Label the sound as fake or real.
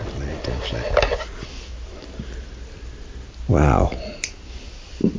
real